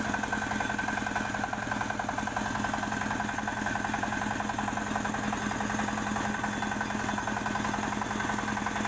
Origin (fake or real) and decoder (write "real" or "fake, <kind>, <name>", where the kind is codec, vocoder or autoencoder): real